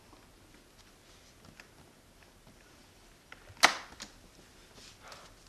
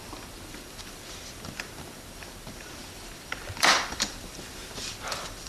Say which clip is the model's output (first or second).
second